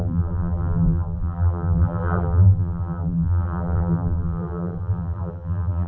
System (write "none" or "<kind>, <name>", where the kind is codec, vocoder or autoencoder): vocoder, BigVGAN v2